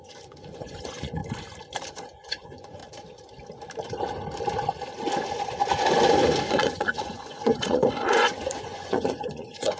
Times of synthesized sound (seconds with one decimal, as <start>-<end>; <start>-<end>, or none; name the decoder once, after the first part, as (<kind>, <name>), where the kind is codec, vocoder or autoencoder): 0.0-1.2 (vocoder, Vocos); 1.9-2.8; 6.5-9.8